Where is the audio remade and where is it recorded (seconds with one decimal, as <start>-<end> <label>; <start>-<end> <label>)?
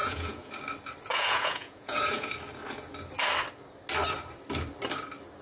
0.0-0.5 remade; 0.5-1.1 recorded; 1.1-2.3 remade; 2.3-5.4 recorded